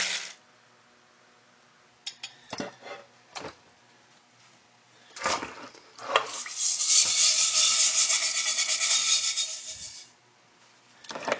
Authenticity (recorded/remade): recorded